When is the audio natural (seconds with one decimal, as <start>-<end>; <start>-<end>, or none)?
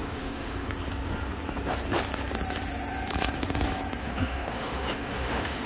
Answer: 0.7-4.0